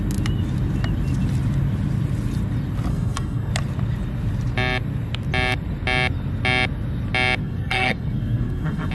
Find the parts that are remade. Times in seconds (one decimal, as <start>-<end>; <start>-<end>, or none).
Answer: 2.9-3.5; 7.4-8.9